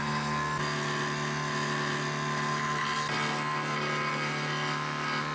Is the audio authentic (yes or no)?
yes